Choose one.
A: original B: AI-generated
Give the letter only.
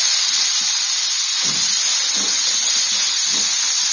A